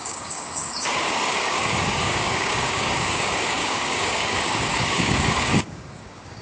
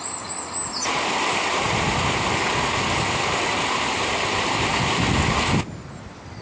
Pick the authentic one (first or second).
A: second